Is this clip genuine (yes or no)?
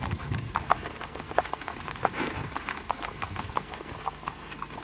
no